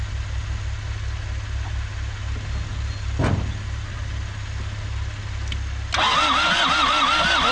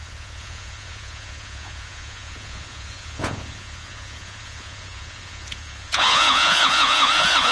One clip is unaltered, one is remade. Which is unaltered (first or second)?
first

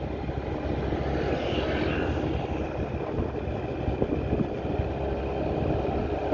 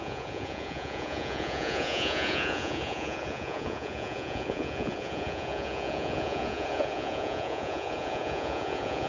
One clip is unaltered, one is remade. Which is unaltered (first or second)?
first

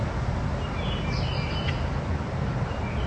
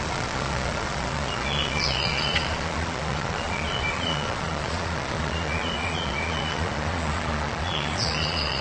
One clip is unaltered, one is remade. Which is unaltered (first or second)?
first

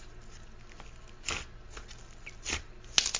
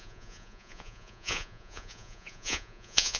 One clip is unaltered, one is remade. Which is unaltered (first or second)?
first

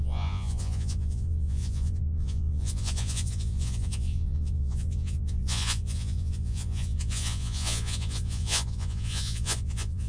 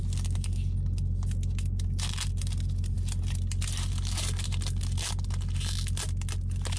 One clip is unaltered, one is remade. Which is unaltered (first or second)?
second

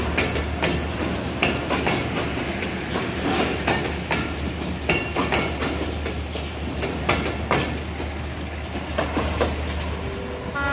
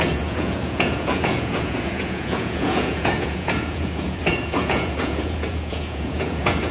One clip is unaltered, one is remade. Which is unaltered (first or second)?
first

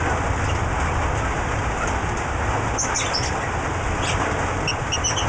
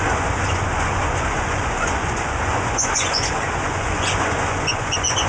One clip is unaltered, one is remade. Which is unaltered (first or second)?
first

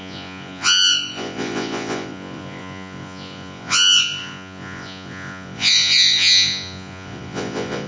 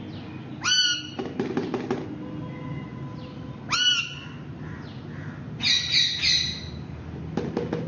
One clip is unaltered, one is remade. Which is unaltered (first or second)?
second